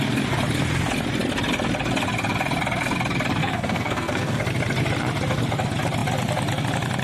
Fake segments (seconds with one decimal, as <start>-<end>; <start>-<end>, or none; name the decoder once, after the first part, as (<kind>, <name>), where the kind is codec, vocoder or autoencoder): 3.4-4.4 (codec, SNAC)

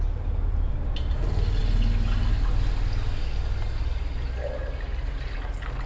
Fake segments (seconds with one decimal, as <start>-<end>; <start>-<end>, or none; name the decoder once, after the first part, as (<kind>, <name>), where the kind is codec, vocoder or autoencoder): none

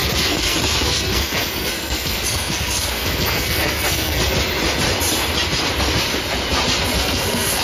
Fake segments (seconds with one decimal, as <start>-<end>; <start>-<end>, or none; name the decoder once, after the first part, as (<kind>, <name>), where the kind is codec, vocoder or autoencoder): 0.0-4.2 (codec, SNAC); 7.0-7.6

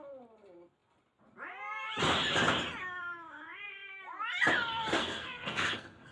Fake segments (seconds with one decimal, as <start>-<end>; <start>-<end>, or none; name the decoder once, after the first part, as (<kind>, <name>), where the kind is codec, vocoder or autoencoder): 5.0-6.1 (codec, SNAC)